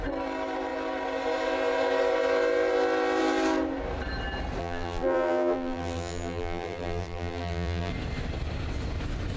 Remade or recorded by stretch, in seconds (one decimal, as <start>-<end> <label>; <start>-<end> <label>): 0.0-4.6 recorded; 4.6-7.9 remade; 7.9-9.4 recorded